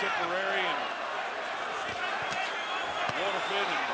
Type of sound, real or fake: real